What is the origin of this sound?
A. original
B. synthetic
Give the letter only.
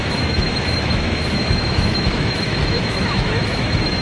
B